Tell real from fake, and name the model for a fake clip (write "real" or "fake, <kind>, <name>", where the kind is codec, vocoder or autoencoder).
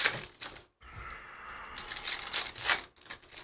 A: real